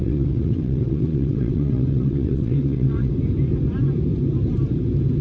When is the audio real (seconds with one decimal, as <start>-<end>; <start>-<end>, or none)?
3.1-5.2